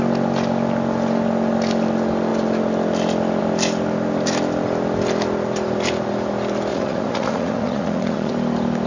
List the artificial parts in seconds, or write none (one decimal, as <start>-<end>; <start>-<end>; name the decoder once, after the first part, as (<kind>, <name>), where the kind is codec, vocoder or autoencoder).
6.7-8.3 (vocoder, Vocos)